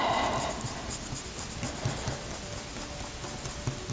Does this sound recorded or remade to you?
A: recorded